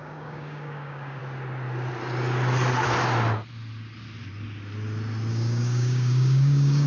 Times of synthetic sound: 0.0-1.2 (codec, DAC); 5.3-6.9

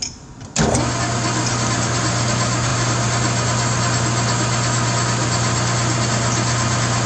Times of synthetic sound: none

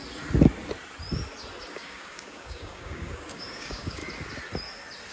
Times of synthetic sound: 1.7-4.0 (codec, DAC)

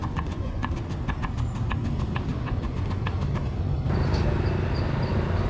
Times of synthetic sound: 0.0-0.7 (vocoder, Vocos); 2.3-3.0

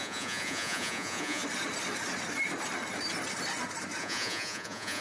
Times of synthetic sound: 0.0-1.4 (vocoder, Vocos); 4.0-5.0

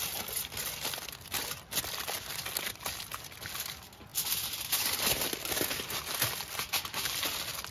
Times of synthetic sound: none